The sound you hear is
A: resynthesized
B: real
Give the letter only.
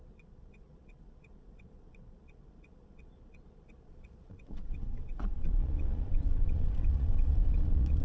A